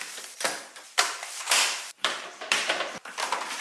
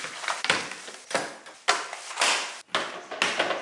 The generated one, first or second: first